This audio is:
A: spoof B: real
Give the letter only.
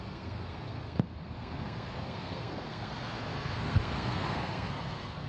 A